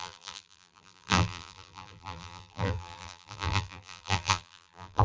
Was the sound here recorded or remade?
remade